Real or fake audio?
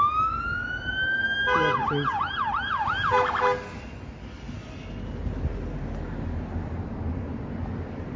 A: real